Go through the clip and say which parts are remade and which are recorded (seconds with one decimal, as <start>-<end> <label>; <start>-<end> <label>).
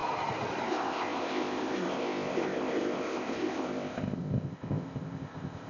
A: 0.0-0.7 recorded; 0.7-5.7 remade